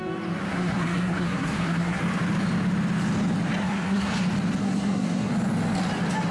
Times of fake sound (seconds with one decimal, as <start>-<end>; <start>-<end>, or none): 0.5-2.0; 3.6-4.1; 4.6-5.3